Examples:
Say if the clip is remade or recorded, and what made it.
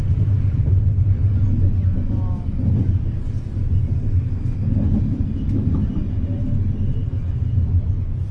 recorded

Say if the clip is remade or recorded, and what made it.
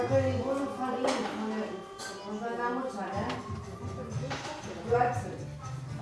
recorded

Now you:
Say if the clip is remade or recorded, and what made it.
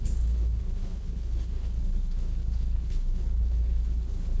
remade, codec, HILCodec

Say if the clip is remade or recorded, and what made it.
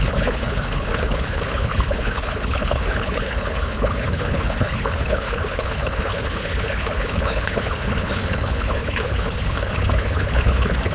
remade, codec, HILCodec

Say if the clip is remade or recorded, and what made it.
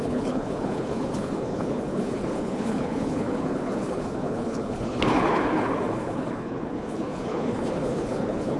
remade, codec, HILCodec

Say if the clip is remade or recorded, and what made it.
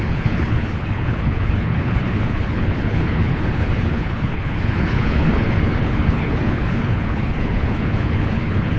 remade, codec, HILCodec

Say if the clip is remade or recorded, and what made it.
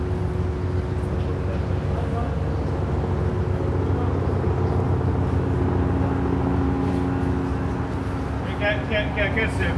recorded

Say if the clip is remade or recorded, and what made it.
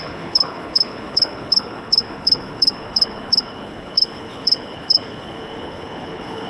remade, codec, HILCodec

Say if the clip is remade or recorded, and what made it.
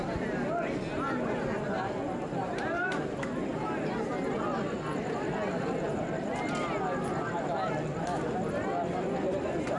recorded